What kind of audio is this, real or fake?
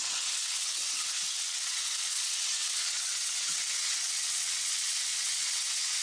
fake